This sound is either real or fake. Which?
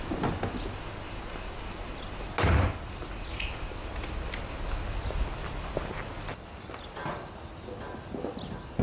real